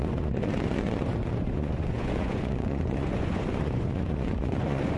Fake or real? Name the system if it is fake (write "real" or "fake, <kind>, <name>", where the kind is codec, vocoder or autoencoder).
fake, vocoder, Vocos